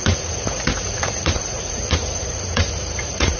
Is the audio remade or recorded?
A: remade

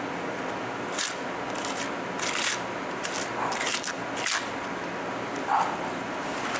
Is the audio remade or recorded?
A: recorded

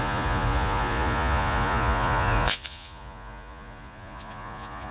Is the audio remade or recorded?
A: remade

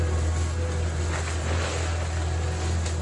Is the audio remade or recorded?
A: recorded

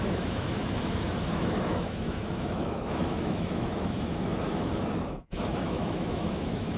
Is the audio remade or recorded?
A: remade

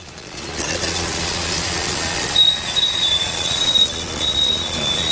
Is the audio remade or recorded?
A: remade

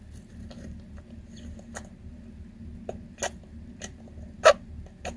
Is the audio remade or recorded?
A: recorded